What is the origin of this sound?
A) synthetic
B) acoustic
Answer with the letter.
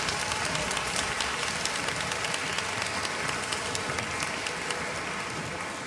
B